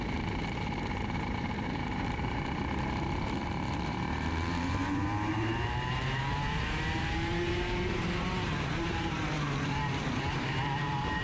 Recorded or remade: remade